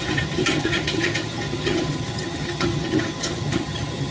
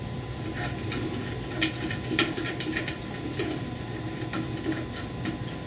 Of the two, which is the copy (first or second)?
first